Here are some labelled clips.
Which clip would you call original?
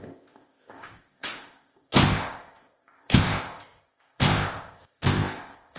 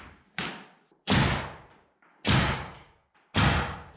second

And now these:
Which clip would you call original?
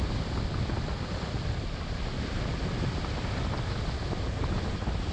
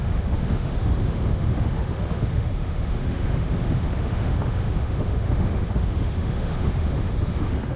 first